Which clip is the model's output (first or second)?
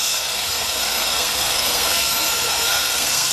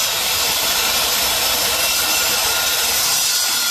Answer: first